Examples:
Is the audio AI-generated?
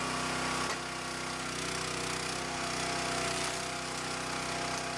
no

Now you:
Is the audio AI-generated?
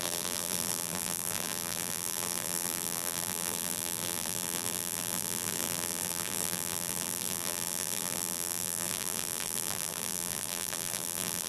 yes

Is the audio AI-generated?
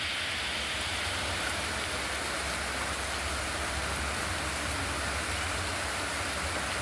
no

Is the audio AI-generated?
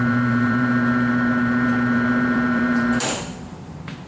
yes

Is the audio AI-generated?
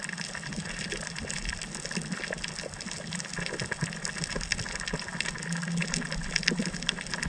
no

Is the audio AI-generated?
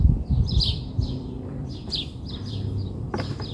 yes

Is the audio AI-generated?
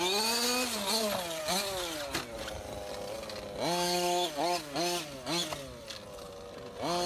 no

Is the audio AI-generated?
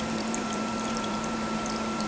yes